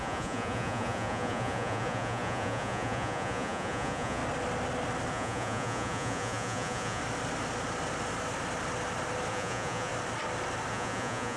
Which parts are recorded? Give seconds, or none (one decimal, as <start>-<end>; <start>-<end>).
4.2-5.1; 7.0-9.3; 9.9-10.7